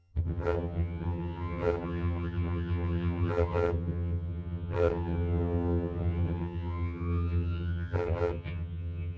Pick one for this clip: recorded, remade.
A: remade